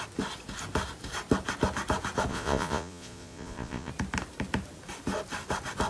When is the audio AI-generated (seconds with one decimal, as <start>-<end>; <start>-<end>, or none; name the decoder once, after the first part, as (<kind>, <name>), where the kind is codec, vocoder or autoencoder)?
2.3-3.9 (vocoder, Vocos)